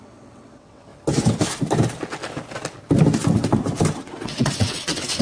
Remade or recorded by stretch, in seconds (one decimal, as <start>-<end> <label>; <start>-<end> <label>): 0.0-0.9 remade; 0.9-4.0 recorded; 4.0-5.2 remade